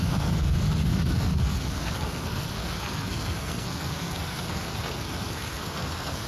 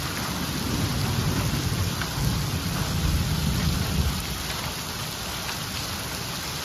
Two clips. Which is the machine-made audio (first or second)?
first